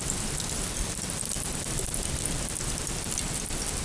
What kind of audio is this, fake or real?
fake